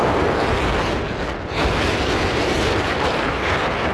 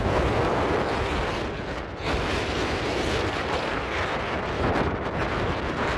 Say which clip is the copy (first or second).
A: second